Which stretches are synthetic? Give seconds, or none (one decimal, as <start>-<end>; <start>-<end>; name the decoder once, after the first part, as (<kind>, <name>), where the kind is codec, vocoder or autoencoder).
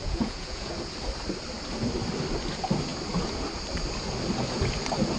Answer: 0.0-0.7 (vocoder, Vocos)